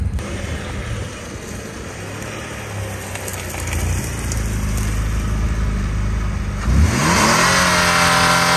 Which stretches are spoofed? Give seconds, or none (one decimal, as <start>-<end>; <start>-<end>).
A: none